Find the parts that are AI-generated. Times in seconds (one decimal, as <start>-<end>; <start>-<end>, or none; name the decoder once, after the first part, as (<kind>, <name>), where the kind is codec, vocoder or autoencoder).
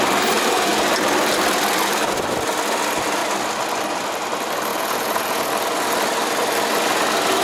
4.7-5.5 (vocoder, Vocos)